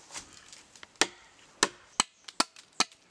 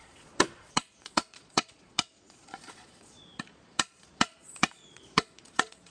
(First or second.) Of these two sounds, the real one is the first